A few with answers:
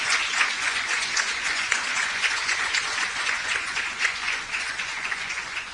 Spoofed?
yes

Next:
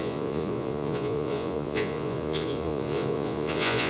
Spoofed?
yes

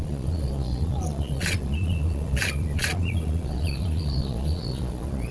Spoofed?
yes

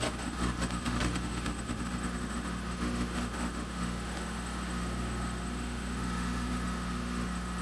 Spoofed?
yes